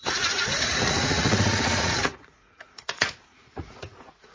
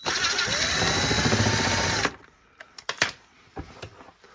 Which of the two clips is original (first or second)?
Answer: second